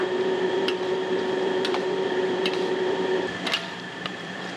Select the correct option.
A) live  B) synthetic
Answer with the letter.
B